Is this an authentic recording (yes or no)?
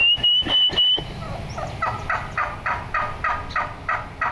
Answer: yes